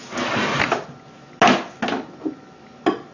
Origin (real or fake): real